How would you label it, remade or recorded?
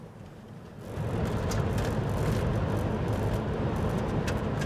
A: recorded